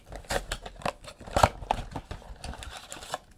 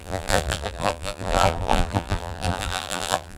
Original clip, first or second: first